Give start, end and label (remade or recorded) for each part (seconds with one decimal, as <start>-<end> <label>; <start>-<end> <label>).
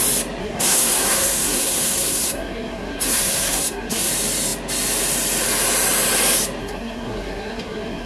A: 0.0-0.4 recorded; 0.4-4.1 remade; 4.1-6.6 recorded; 6.6-8.1 remade